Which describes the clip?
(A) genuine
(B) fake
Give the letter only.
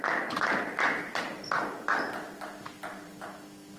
A